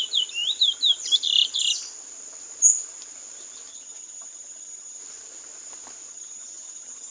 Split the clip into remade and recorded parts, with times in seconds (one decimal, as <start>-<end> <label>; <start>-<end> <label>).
0.0-3.7 recorded; 3.7-5.0 remade; 5.0-6.1 recorded; 6.1-7.1 remade